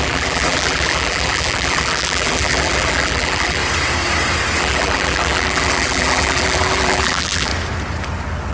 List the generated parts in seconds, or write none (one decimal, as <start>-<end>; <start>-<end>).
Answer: 0.0-3.6; 4.6-7.5